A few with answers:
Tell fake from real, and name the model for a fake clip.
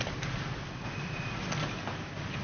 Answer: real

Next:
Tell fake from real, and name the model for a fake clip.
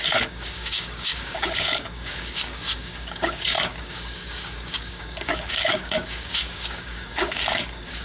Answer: fake, codec, DAC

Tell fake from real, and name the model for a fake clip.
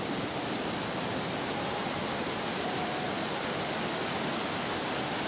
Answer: real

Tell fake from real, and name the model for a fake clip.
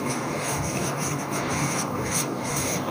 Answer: fake, codec, DAC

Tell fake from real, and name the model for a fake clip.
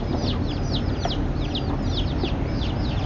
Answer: real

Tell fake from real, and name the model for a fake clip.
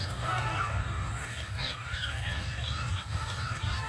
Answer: fake, codec, DAC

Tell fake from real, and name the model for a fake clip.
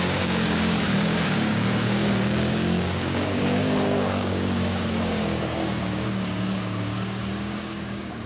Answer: fake, codec, DAC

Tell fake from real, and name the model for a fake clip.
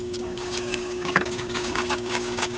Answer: fake, codec, DAC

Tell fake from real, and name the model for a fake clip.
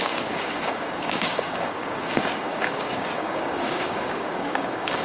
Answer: fake, codec, DAC